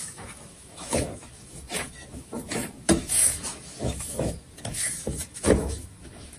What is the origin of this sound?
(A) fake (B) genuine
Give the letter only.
A